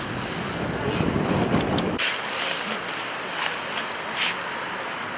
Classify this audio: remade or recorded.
recorded